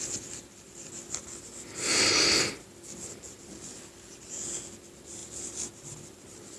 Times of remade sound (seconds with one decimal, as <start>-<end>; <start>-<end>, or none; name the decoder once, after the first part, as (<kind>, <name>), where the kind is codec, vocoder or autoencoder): none